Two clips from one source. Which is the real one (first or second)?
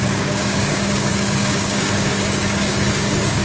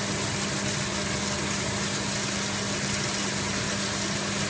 second